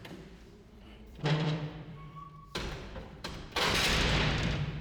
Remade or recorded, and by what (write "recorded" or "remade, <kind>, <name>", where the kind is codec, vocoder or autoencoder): remade, vocoder, BigVGAN v2